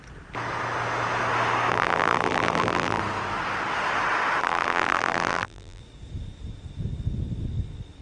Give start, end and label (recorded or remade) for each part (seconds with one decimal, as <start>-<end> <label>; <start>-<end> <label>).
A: 0.0-1.7 recorded; 1.7-3.0 remade; 3.0-4.4 recorded; 4.4-5.8 remade; 5.8-8.0 recorded